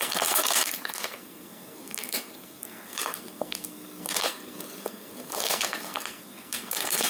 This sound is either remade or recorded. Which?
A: remade